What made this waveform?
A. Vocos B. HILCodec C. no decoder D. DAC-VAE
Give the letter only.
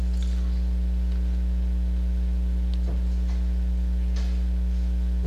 C